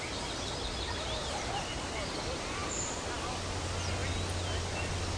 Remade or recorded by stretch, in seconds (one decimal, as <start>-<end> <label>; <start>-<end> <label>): 0.0-5.2 recorded